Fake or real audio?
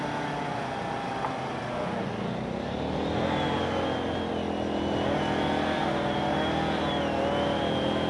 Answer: real